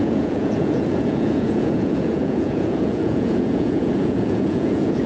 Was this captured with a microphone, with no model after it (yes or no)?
no